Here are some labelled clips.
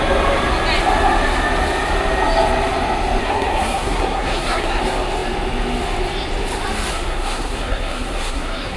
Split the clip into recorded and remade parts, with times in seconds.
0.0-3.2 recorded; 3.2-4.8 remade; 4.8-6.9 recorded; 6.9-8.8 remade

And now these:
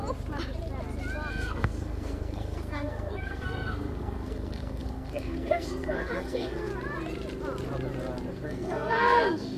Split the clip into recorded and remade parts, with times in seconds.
0.0-1.3 recorded; 1.3-6.7 remade; 6.7-8.3 recorded; 8.3-9.6 remade

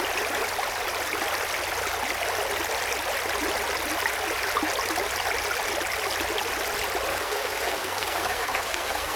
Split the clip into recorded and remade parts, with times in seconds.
0.0-7.1 recorded; 7.1-9.2 remade

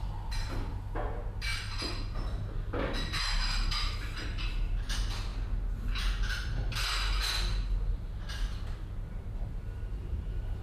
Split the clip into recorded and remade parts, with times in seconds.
0.0-10.0 recorded; 10.0-10.6 remade

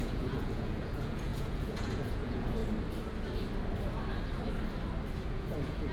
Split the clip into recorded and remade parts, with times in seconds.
0.0-2.6 remade; 2.6-5.1 recorded; 5.1-5.9 remade

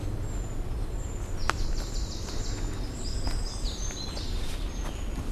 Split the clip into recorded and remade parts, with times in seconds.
0.0-5.3 recorded